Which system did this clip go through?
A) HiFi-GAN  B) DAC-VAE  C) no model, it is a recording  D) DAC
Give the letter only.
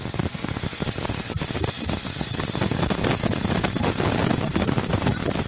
C